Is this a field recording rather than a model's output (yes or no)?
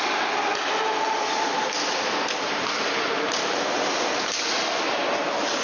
yes